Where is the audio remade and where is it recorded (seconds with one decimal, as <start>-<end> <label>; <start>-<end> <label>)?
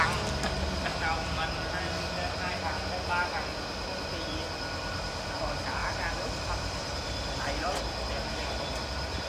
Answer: 0.0-5.8 recorded; 5.8-7.8 remade; 7.8-9.3 recorded